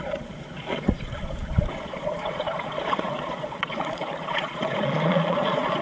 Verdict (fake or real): fake